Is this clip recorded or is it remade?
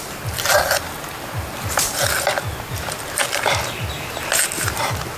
recorded